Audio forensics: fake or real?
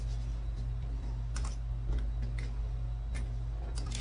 real